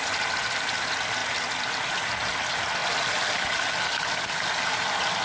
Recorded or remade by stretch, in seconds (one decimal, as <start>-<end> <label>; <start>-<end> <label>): 0.0-5.2 recorded